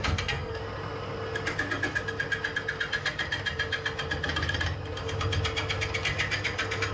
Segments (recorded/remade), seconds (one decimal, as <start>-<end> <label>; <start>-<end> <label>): 0.0-0.6 remade; 0.6-6.9 recorded